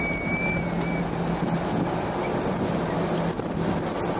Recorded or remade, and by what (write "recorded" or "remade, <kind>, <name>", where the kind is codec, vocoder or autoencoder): recorded